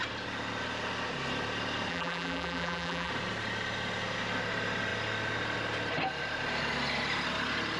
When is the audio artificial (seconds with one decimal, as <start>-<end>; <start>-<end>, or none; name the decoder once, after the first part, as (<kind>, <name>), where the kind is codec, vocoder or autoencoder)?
1.9-3.1 (vocoder, BigVGAN v2)